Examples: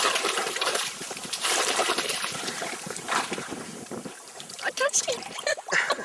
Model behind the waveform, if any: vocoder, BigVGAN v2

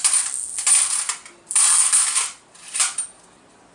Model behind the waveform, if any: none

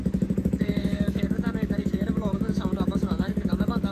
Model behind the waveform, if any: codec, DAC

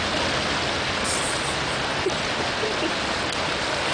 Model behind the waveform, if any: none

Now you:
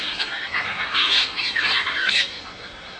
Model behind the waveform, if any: codec, SNAC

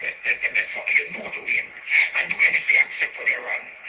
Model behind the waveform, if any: codec, HILCodec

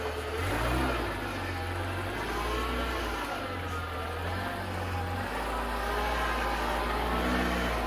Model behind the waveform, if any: none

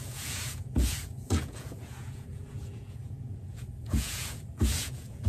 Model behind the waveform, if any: vocoder, Vocos